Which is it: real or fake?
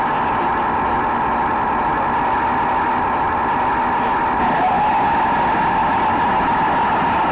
real